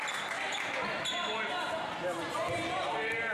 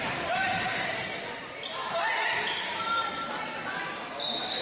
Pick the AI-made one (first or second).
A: second